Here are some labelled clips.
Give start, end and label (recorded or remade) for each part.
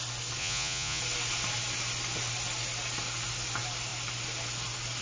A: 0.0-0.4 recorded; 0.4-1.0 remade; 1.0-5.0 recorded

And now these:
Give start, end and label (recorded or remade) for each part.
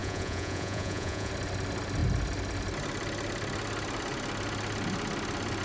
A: 0.0-1.3 remade; 1.3-5.6 recorded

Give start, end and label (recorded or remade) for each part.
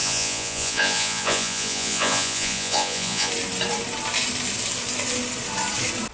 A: 0.0-3.3 remade; 3.3-6.1 recorded